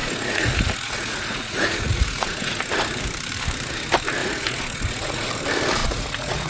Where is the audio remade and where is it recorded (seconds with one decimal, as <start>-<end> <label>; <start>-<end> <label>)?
0.0-2.6 remade; 2.6-4.2 recorded; 4.2-5.3 remade; 5.3-5.8 recorded; 5.8-6.5 remade